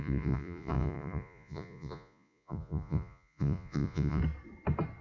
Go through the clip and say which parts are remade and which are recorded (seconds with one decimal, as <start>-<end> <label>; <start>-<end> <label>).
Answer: 0.0-4.2 remade; 4.2-5.0 recorded